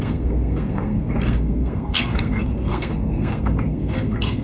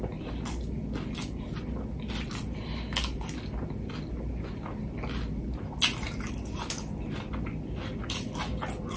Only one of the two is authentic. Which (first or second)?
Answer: second